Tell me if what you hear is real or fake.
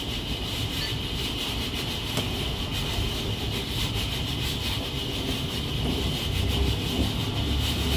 real